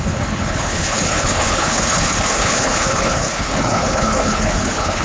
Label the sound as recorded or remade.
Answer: remade